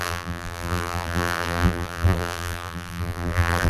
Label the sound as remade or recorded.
remade